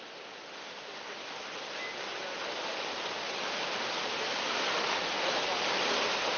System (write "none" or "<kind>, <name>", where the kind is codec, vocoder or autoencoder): none